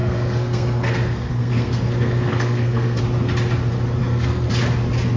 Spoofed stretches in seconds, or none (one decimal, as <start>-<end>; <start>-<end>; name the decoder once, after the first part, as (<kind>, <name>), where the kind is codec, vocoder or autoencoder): 0.0-3.0 (codec, SNAC); 4.0-4.5